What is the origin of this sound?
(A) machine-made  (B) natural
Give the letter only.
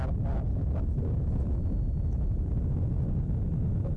B